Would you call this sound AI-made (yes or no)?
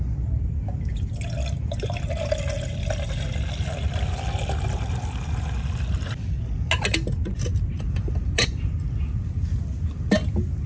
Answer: no